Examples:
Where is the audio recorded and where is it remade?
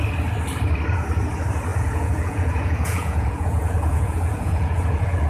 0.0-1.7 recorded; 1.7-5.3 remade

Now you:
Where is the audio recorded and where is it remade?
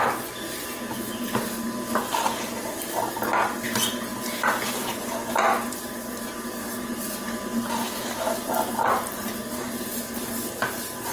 0.0-11.1 recorded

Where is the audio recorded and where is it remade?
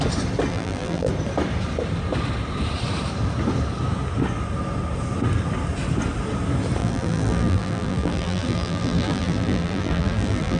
0.0-0.5 recorded; 0.5-1.1 remade; 1.1-6.8 recorded; 6.8-10.6 remade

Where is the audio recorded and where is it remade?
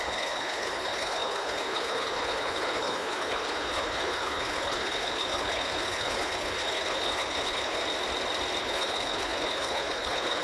0.0-7.8 remade; 7.8-8.6 recorded; 8.6-10.4 remade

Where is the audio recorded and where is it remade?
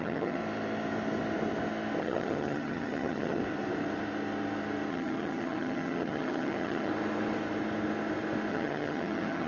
0.0-0.4 remade; 0.4-2.0 recorded; 2.0-3.4 remade; 3.4-4.9 recorded; 4.9-6.9 remade; 6.9-8.5 recorded; 8.5-9.5 remade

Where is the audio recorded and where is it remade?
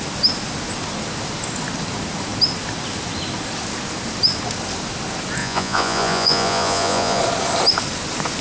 0.0-5.4 recorded; 5.4-7.2 remade; 7.2-8.4 recorded